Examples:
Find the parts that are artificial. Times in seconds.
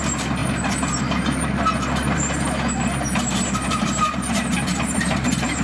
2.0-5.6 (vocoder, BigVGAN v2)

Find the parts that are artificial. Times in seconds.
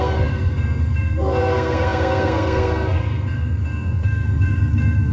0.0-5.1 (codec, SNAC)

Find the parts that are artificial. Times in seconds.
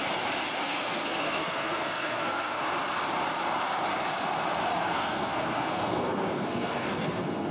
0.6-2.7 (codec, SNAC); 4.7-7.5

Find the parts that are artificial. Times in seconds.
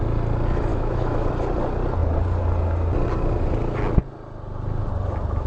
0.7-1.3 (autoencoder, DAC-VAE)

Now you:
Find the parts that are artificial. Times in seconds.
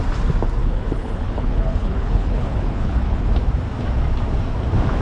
0.6-3.3 (codec, HILCodec)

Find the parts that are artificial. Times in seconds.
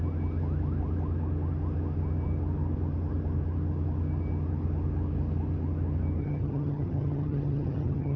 6.2-8.2 (vocoder, HiFi-GAN)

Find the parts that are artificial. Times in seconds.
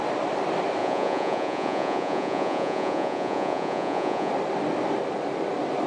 0.8-4.3 (vocoder, Vocos)